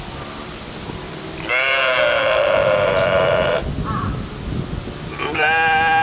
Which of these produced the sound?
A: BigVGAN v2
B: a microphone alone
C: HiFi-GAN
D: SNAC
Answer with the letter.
B